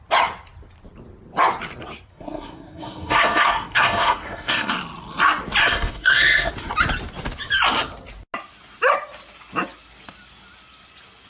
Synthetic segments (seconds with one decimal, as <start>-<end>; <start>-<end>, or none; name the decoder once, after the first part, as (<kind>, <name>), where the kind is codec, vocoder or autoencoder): 2.1-4.7 (codec, SNAC); 5.6-6.5